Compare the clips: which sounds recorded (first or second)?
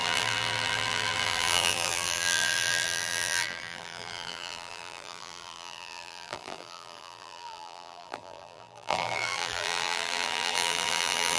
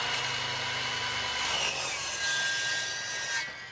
second